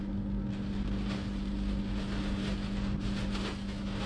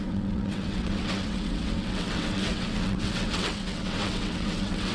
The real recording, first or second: first